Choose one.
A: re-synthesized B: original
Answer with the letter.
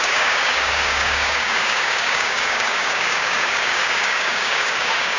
A